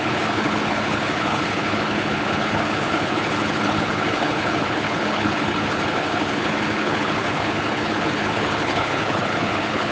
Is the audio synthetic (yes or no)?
yes